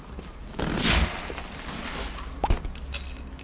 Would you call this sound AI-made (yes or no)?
no